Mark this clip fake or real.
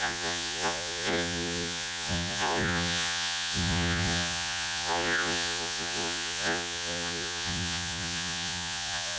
fake